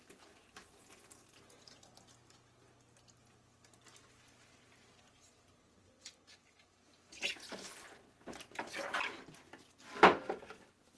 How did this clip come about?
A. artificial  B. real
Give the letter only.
B